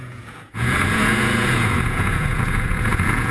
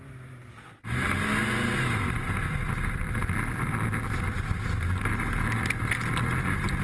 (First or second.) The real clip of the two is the second